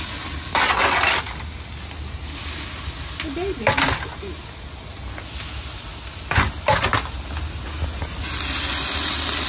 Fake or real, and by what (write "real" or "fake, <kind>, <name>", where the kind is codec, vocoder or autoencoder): real